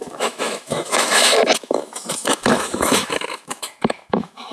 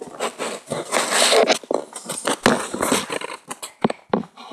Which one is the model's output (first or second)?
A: first